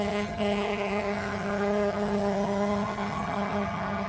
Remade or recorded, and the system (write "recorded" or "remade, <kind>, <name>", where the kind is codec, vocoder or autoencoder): remade, vocoder, HiFi-GAN